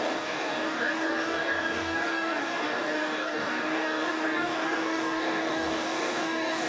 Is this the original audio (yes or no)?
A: no